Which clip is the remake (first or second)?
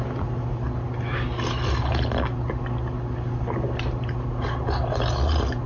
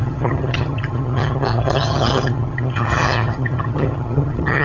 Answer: second